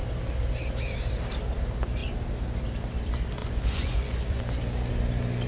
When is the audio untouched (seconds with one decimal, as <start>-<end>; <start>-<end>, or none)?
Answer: 0.0-3.4; 4.4-5.5